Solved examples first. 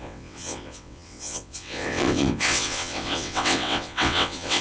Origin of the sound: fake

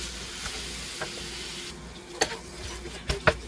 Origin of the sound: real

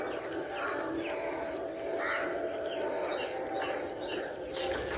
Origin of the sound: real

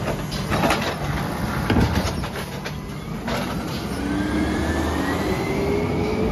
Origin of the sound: real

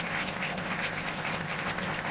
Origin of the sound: fake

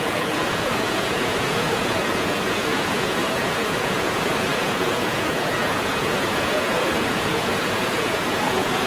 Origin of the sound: fake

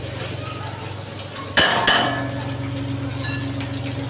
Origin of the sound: real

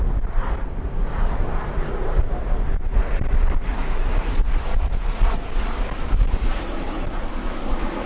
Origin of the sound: real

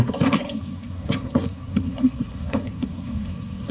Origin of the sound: fake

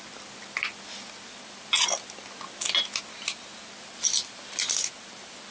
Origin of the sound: real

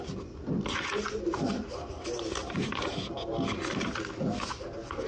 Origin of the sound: real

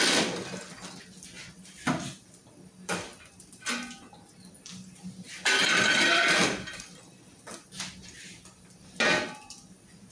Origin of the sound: real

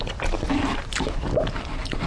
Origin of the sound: real